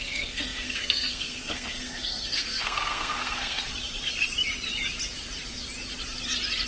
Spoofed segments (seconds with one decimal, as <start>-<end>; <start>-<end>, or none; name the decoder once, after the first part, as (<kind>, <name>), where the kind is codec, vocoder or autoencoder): 0.0-3.7 (codec, SNAC)